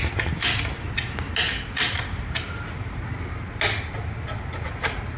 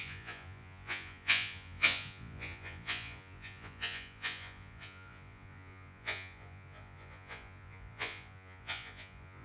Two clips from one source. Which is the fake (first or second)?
second